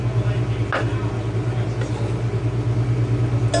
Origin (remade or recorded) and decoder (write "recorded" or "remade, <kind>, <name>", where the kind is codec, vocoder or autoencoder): recorded